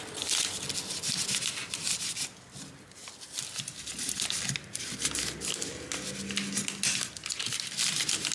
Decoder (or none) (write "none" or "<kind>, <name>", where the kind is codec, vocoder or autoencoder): none